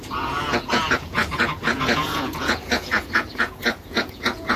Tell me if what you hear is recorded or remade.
remade